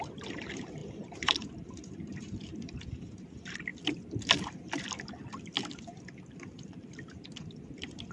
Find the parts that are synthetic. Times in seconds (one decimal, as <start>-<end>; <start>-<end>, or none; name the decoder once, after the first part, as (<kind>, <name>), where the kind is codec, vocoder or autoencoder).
0.0-3.7 (vocoder, BigVGAN v2); 7.4-8.1